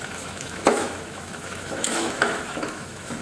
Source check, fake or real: fake